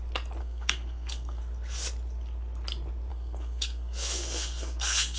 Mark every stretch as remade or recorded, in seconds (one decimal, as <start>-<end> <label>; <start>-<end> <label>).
0.0-0.4 recorded; 0.4-1.4 remade; 1.4-3.1 recorded; 3.1-5.2 remade